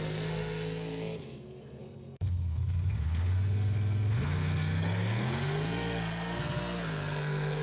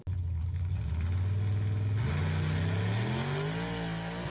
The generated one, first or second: first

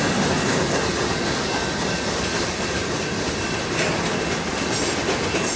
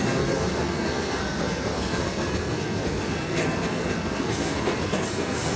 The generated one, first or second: second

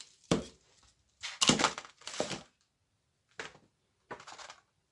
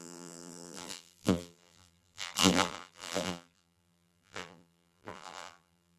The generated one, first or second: second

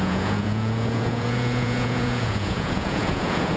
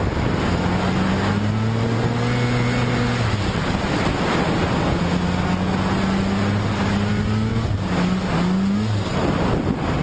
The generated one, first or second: first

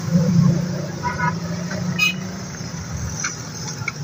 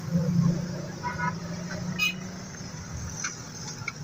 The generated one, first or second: first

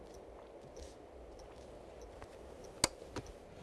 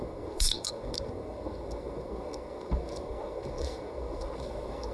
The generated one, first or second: second